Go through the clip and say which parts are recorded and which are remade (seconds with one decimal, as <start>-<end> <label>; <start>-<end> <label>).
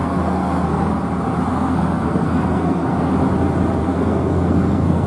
0.0-0.9 remade; 0.9-1.5 recorded; 1.5-3.1 remade; 3.1-3.8 recorded; 3.8-5.1 remade